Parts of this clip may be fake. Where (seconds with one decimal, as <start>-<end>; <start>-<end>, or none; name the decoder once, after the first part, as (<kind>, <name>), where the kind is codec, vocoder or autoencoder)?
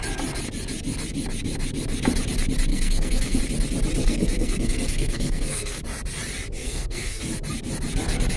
2.7-3.4 (codec, SNAC); 4.0-5.8; 6.6-7.2